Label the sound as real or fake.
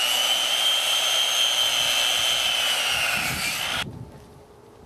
real